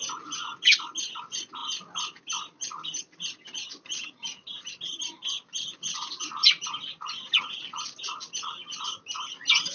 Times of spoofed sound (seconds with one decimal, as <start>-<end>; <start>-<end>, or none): none